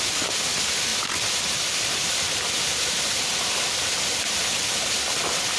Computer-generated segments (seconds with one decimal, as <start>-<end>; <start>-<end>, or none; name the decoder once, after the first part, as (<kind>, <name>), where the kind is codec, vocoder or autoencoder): none